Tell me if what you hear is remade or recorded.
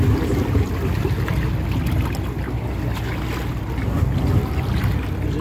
recorded